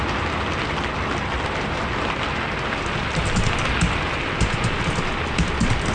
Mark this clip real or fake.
real